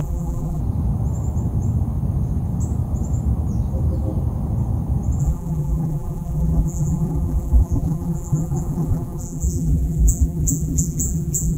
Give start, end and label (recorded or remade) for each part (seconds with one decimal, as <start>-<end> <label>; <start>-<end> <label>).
0.0-0.6 remade; 0.6-5.2 recorded; 5.2-11.6 remade